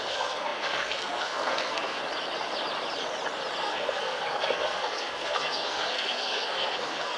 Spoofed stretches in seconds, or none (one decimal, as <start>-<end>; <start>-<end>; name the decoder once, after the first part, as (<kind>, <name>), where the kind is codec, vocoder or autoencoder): 0.0-2.0 (codec, SNAC); 3.6-7.2

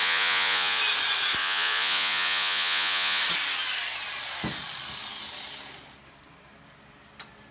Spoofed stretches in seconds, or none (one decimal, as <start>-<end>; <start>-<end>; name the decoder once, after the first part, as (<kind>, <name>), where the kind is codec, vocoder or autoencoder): 0.0-0.8 (vocoder, Vocos); 1.4-3.2

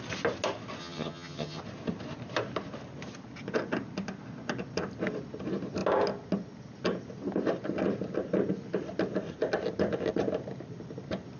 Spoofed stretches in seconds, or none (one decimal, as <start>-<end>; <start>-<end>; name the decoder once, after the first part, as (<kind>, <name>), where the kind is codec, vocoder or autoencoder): 0.8-1.6 (vocoder, HiFi-GAN)

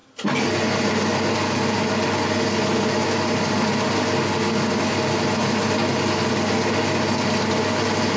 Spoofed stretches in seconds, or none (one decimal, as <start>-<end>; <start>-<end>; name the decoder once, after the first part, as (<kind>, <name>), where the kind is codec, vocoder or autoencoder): none

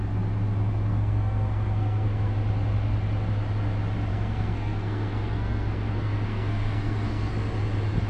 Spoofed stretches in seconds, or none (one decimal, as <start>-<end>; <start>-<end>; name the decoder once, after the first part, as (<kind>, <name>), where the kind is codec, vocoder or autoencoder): 0.9-2.3 (codec, SNAC); 4.1-7.3

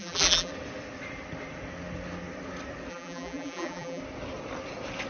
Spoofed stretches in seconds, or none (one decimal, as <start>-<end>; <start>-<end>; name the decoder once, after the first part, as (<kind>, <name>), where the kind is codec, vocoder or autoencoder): 0.0-0.5 (vocoder, BigVGAN v2); 2.9-4.0